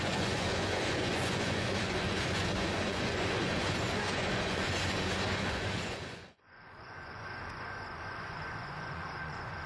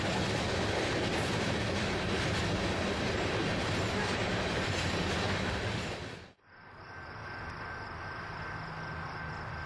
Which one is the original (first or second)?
second